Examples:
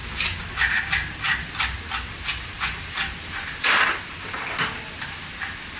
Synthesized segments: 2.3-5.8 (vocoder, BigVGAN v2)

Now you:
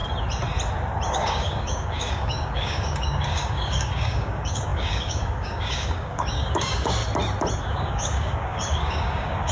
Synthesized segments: 1.1-7.0 (codec, DAC); 7.6-9.5

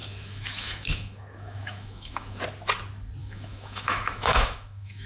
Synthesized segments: 0.0-2.4 (autoencoder, DAC-VAE); 3.2-5.1

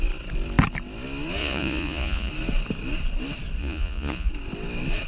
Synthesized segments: 1.4-2.3 (vocoder, Vocos); 3.6-4.3

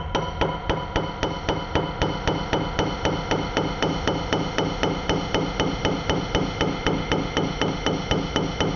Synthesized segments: none

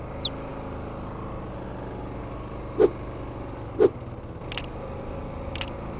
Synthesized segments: none

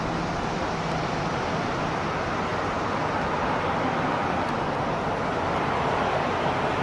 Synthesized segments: none